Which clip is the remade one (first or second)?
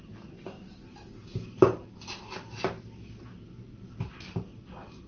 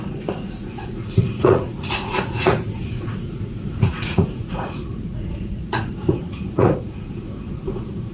second